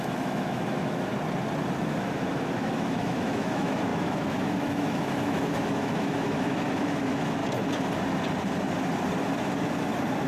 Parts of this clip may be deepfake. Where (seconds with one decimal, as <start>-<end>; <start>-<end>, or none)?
0.0-1.1; 1.8-7.4

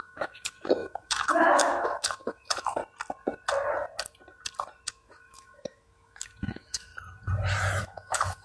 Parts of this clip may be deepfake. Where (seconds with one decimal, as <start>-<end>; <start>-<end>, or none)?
0.0-2.8; 4.9-6.9; 7.8-8.4